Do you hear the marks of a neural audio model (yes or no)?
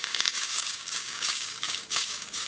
yes